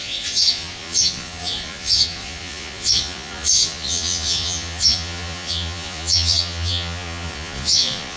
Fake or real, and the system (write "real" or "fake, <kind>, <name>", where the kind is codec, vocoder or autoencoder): fake, vocoder, Vocos